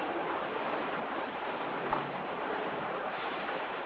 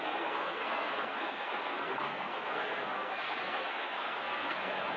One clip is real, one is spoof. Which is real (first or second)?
first